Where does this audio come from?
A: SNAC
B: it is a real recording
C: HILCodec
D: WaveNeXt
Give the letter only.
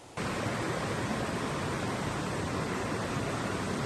B